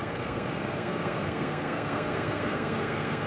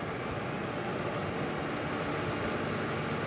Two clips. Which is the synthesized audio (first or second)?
first